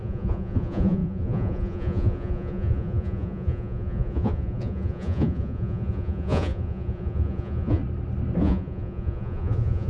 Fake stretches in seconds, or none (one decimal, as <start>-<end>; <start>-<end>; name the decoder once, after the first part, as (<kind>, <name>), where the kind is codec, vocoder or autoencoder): 0.0-7.8 (vocoder, Vocos); 8.4-9.9